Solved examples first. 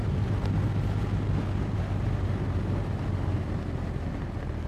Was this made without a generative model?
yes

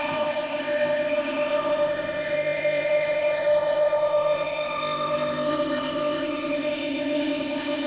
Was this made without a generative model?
no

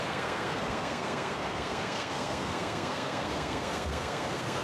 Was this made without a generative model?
no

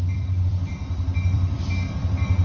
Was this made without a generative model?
no